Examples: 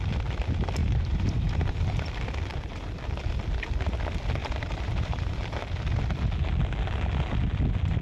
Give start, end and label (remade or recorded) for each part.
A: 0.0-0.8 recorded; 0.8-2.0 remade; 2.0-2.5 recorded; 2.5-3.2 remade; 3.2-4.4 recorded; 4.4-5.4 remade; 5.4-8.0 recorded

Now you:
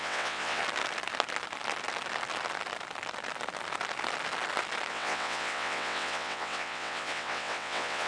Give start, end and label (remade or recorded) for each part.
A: 0.0-0.6 remade; 0.6-4.9 recorded; 4.9-8.1 remade

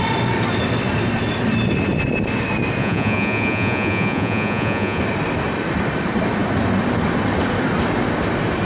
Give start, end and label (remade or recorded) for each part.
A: 0.0-2.8 recorded; 2.8-5.0 remade; 5.0-8.7 recorded

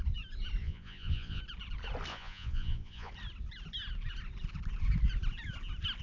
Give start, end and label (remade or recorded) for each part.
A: 0.0-0.6 recorded; 0.6-1.4 remade; 1.4-2.1 recorded; 2.1-3.1 remade; 3.1-6.0 recorded

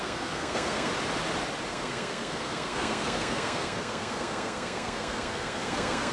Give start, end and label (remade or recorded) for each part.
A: 0.0-0.9 remade; 0.9-1.7 recorded; 1.7-6.1 remade

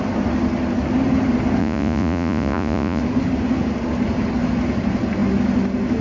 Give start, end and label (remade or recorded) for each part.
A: 0.0-1.6 recorded; 1.6-3.0 remade; 3.0-6.0 recorded